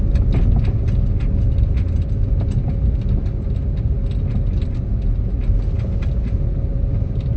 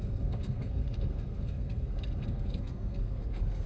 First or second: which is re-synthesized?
second